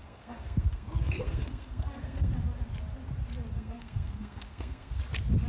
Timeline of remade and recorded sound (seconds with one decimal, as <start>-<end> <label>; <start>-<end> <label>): 0.0-2.3 remade; 2.3-3.5 recorded; 3.5-5.0 remade; 5.0-5.5 recorded